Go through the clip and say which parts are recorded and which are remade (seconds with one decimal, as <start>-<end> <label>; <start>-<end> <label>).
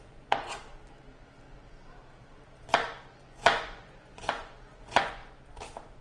0.0-0.6 remade; 0.6-3.1 recorded; 3.1-5.2 remade; 5.2-6.0 recorded